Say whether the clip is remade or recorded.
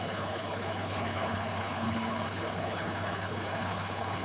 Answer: remade